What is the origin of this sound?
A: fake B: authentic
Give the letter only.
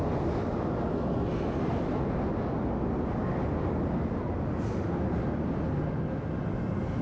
B